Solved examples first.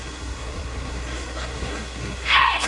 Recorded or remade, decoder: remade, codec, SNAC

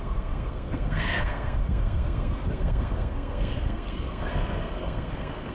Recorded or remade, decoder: remade, codec, SNAC